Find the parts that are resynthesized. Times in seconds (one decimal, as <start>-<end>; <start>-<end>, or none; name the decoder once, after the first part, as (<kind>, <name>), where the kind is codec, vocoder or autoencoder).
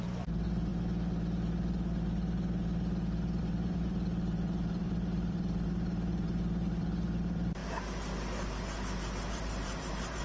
0.0-0.7 (vocoder, BigVGAN v2); 3.4-7.6; 9.3-10.2